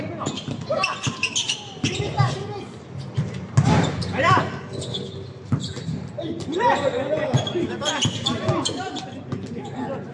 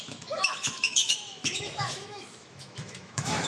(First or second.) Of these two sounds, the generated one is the second